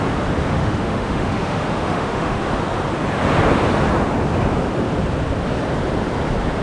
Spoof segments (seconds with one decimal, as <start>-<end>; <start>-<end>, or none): 0.6-2.4